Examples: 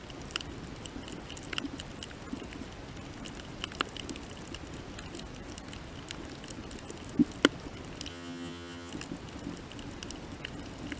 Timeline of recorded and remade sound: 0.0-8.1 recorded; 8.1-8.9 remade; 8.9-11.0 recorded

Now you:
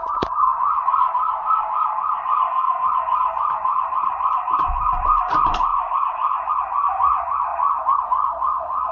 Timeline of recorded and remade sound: 0.0-5.7 remade; 5.7-6.5 recorded; 6.5-7.5 remade; 7.5-8.0 recorded; 8.0-8.9 remade

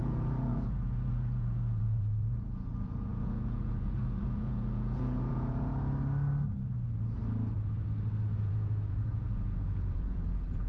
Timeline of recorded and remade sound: 0.0-5.7 remade; 5.7-8.4 recorded; 8.4-10.7 remade